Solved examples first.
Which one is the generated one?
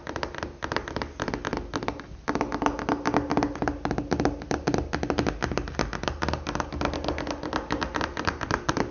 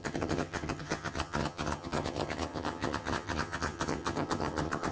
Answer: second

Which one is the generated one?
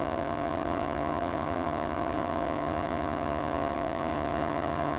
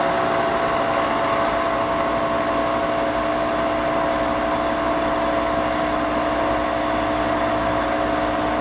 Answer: first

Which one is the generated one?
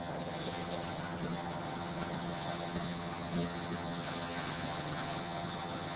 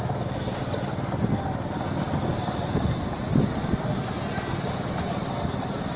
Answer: first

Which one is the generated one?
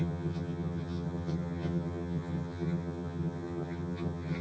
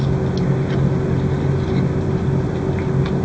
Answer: first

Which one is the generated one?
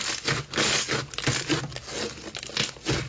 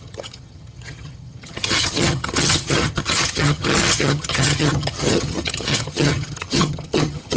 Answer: second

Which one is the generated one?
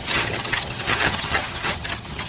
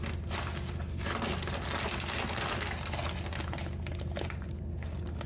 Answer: first